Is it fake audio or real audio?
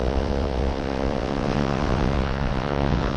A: fake